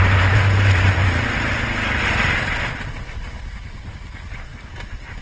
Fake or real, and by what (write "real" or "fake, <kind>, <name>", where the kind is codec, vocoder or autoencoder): real